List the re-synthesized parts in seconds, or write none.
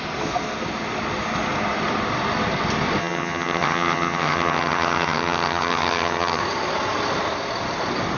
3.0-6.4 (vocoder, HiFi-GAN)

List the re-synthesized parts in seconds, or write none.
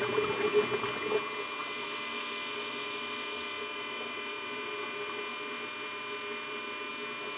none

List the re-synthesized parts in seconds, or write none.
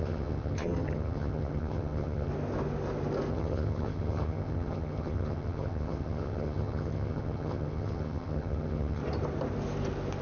0.0-2.3 (vocoder, HiFi-GAN); 3.3-9.0